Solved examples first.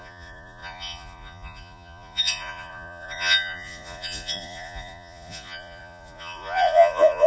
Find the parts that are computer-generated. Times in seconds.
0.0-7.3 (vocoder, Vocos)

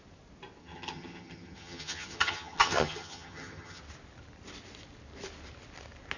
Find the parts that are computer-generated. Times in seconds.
0.6-3.8 (vocoder, HiFi-GAN)

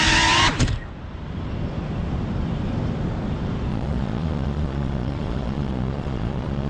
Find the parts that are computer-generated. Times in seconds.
3.7-6.7 (vocoder, Vocos)

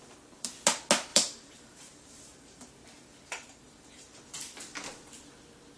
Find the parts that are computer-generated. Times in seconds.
1.1-2.7 (vocoder, BigVGAN v2); 3.1-4.2

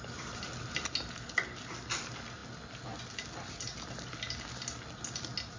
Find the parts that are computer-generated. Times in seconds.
none

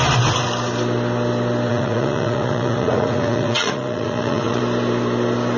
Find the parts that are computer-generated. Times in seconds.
1.7-4.6 (vocoder, Vocos)

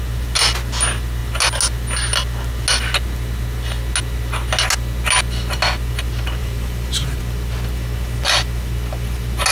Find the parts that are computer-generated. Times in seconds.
6.4-7.2 (vocoder, BigVGAN v2)